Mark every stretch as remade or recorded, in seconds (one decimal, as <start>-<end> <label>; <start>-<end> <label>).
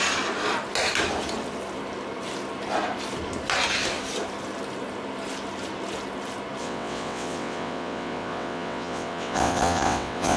0.0-6.6 recorded; 6.6-10.4 remade